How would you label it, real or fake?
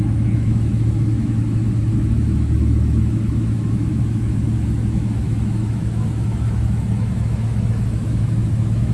fake